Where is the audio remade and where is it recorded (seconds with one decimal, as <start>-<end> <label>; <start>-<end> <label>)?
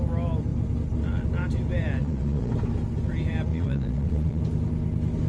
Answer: 0.0-2.0 recorded; 2.0-2.5 remade; 2.5-3.5 recorded; 3.5-4.4 remade; 4.4-5.3 recorded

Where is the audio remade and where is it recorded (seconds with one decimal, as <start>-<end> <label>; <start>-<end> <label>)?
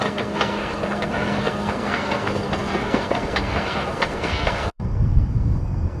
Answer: 0.0-6.0 remade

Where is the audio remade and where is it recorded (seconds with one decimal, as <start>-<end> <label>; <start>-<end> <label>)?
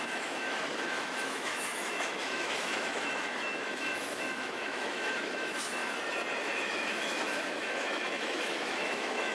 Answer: 0.0-5.8 remade; 5.8-6.4 recorded; 6.4-9.3 remade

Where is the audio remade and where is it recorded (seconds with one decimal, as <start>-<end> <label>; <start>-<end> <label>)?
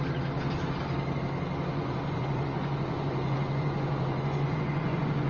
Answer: 0.0-1.7 recorded; 1.7-5.3 remade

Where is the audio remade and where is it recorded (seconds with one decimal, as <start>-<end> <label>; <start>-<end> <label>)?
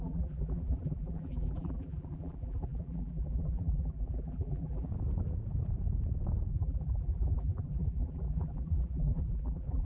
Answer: 0.0-4.9 remade; 4.9-6.5 recorded; 6.5-9.8 remade